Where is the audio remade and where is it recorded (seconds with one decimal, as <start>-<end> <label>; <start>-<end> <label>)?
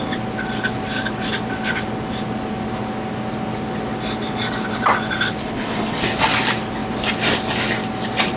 0.0-5.4 recorded; 5.4-6.0 remade; 6.0-8.4 recorded